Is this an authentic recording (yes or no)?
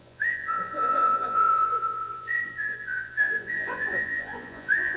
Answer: no